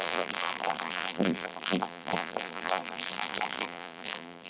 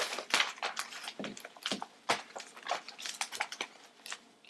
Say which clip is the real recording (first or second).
second